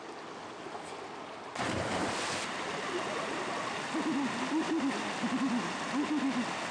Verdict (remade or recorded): recorded